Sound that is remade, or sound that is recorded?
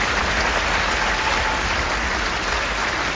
recorded